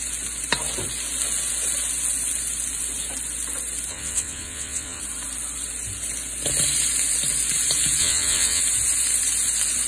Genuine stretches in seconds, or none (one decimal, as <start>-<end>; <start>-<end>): 0.0-3.9; 5.0-8.0; 8.6-9.9

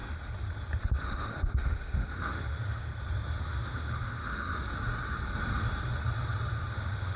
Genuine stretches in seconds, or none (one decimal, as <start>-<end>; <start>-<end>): 0.0-1.0; 2.9-3.4; 4.7-6.7

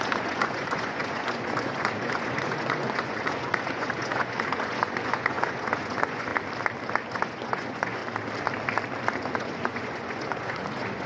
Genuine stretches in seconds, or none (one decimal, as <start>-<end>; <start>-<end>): 6.3-7.1; 8.0-9.2

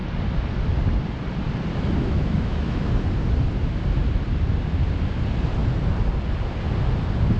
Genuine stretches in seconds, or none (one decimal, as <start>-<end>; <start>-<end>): 0.0-2.0; 2.9-7.4